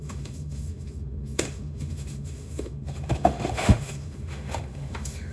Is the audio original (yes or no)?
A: no